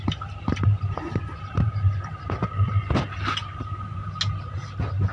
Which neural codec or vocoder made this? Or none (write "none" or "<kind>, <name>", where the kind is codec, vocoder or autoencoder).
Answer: none